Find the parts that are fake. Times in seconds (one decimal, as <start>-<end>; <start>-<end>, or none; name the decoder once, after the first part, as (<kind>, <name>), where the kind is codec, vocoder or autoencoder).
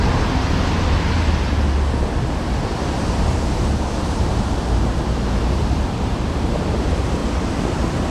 2.7-6.8 (vocoder, BigVGAN v2)